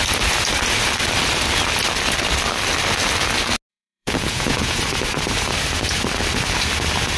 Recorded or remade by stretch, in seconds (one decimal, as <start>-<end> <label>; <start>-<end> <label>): 0.0-3.7 recorded; 3.7-4.8 remade; 4.8-7.2 recorded